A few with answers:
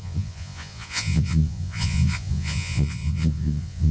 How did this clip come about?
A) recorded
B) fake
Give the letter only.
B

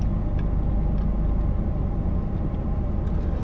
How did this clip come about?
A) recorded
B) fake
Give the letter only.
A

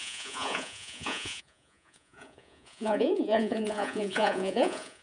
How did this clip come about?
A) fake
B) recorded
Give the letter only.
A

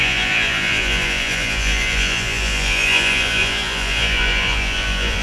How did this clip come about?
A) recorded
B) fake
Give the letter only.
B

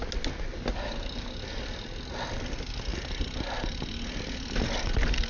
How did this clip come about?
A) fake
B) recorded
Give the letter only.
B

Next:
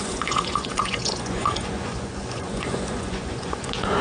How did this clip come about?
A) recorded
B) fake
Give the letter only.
B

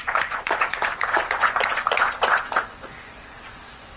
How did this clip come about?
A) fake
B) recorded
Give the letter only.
A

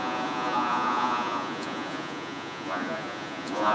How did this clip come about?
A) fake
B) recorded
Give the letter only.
A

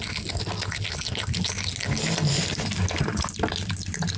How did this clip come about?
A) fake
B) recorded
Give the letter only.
B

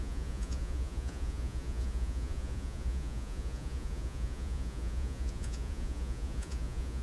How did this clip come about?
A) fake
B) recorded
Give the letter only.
A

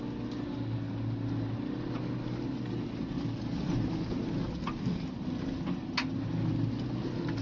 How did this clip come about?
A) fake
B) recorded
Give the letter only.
B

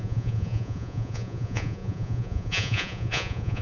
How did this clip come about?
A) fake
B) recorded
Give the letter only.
A